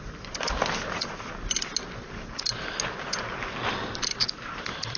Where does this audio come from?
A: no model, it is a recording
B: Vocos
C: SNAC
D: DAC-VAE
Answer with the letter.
A